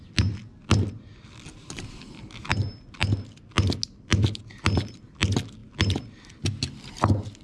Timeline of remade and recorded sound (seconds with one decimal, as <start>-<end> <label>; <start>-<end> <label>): 0.0-7.4 recorded